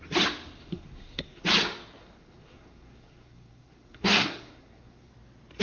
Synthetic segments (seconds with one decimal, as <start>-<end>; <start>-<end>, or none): 0.6-1.4; 2.0-5.1